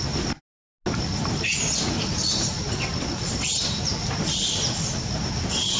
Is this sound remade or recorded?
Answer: recorded